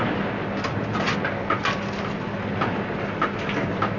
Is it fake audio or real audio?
real